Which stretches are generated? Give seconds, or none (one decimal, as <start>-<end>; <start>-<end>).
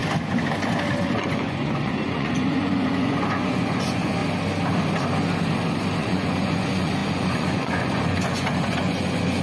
1.0-4.2; 6.0-9.4